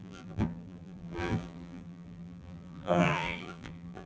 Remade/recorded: remade